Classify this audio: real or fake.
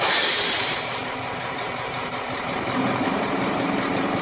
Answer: fake